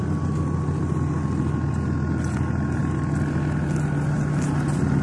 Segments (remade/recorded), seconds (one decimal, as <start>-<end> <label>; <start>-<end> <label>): 0.0-5.0 recorded

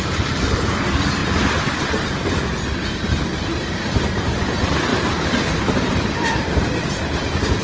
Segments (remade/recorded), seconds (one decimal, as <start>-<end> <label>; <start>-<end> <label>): 0.0-4.9 recorded; 4.9-6.6 remade; 6.6-7.6 recorded

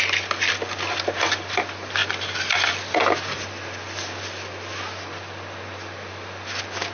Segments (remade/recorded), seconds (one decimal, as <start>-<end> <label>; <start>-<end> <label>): 0.0-6.9 recorded

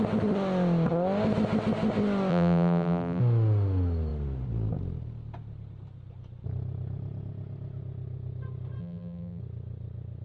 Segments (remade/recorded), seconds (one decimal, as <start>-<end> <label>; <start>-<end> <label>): 0.0-2.3 recorded; 2.3-3.2 remade; 3.2-8.8 recorded; 8.8-9.4 remade; 9.4-10.2 recorded